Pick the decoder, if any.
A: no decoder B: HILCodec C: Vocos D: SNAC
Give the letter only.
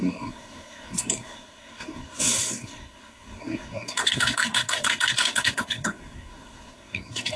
D